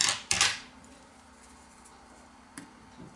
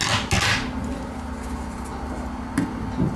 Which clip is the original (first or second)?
second